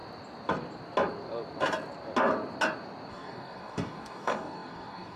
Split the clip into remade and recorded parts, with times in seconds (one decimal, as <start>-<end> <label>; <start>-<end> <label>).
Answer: 0.0-3.1 recorded; 3.1-5.2 remade